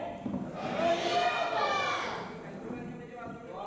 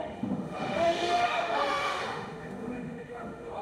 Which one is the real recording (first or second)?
first